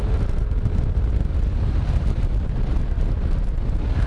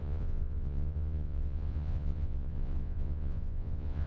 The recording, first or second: first